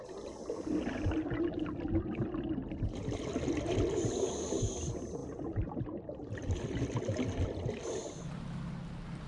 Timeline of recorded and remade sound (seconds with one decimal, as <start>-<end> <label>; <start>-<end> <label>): 0.0-9.3 recorded